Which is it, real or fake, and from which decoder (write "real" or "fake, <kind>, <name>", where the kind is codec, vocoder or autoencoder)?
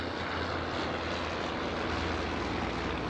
real